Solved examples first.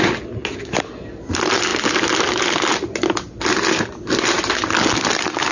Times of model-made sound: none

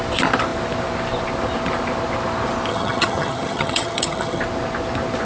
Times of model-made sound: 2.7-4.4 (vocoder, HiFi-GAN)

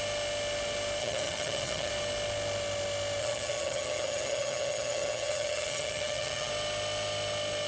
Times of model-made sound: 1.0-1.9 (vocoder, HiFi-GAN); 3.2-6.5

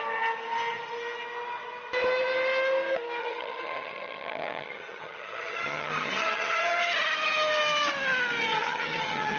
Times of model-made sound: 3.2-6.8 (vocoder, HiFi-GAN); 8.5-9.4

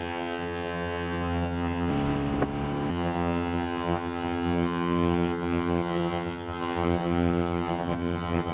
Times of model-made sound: 0.0-1.9 (vocoder, HiFi-GAN); 2.9-8.5

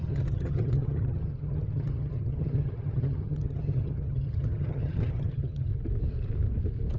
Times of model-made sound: 0.0-5.7 (vocoder, HiFi-GAN)

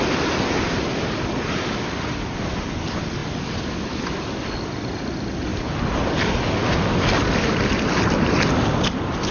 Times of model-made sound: none

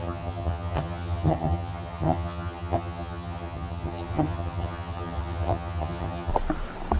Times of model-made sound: 0.0-6.3 (vocoder, HiFi-GAN)